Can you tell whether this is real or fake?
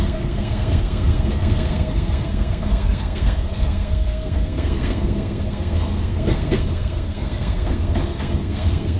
fake